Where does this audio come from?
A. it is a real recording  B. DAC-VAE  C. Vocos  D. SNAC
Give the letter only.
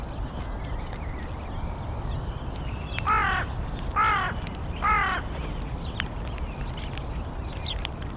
A